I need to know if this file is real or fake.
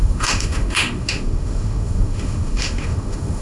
fake